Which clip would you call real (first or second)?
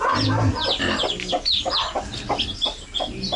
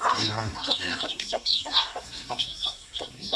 first